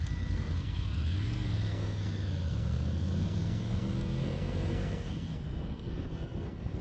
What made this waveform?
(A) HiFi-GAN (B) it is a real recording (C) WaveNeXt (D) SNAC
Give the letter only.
D